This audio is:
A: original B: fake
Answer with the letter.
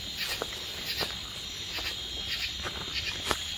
A